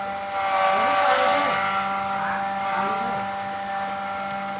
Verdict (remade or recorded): recorded